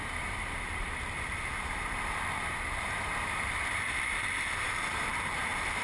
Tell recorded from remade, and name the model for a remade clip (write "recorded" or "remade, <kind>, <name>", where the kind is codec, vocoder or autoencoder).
remade, vocoder, BigVGAN v2